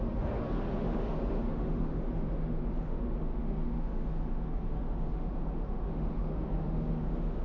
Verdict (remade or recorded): remade